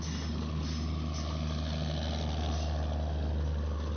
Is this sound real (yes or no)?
yes